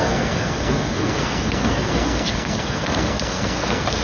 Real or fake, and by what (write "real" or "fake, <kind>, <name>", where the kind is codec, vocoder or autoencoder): fake, codec, SNAC